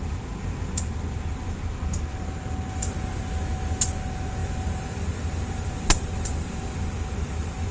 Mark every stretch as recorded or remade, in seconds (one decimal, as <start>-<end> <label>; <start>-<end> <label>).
0.0-2.1 recorded; 2.1-2.8 remade; 2.8-4.4 recorded; 4.4-6.8 remade; 6.8-7.7 recorded